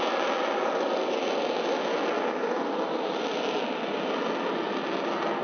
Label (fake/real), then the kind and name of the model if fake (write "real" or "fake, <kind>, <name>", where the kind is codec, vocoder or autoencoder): real